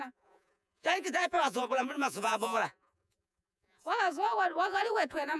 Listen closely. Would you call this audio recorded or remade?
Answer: remade